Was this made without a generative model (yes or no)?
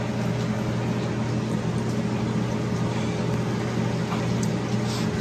yes